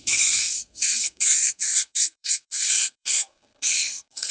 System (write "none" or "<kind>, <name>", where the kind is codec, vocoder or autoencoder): codec, SNAC